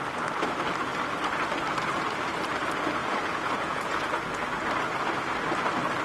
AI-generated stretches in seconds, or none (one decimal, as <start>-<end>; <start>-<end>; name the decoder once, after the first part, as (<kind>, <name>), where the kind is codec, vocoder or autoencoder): 3.0-4.4 (vocoder, Vocos)

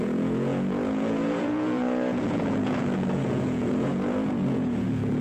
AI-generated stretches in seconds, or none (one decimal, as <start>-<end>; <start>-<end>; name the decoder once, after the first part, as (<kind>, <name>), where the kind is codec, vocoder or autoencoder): 0.0-5.2 (vocoder, Vocos)

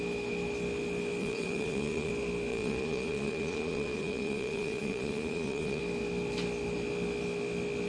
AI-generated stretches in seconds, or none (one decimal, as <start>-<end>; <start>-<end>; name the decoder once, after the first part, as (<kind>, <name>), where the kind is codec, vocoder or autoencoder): 1.2-2.1 (vocoder, Vocos); 2.5-5.8

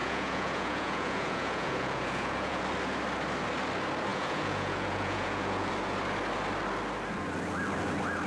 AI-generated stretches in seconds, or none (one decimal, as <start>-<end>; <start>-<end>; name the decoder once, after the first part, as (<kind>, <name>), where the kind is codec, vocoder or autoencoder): 0.0-2.6 (vocoder, Vocos); 4.1-5.7

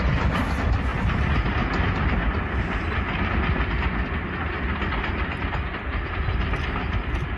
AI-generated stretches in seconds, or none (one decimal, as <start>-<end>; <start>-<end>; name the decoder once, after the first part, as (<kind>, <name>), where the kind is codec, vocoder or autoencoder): none